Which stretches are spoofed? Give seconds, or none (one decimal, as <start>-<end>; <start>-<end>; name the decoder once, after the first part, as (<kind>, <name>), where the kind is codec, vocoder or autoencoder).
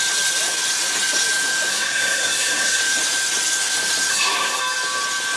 1.7-2.8 (codec, SNAC); 4.1-4.6